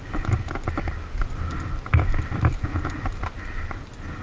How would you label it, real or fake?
real